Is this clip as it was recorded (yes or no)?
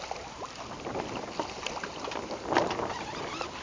yes